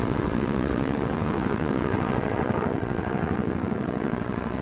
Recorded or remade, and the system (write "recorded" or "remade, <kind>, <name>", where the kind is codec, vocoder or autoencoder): remade, vocoder, WaveNeXt